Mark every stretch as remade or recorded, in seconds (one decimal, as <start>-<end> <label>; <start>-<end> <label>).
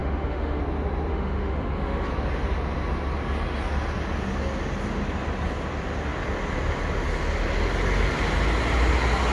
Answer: 0.0-0.6 remade; 0.6-1.1 recorded; 1.1-2.1 remade; 2.1-9.3 recorded